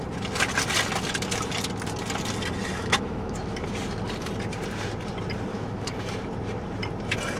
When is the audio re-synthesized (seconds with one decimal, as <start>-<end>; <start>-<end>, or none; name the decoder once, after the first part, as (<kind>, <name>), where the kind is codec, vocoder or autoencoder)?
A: 2.8-3.7 (autoencoder, DAC-VAE); 5.5-6.1